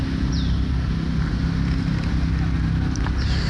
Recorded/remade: recorded